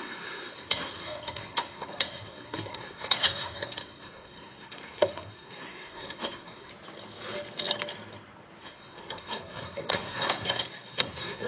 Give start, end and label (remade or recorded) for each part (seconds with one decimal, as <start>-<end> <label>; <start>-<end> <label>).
0.0-6.7 remade; 6.7-8.6 recorded; 8.6-11.5 remade